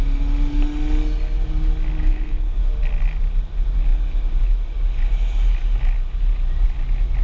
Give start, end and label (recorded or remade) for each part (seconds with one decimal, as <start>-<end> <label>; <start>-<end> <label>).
0.0-2.0 recorded; 2.0-2.6 remade; 2.6-7.2 recorded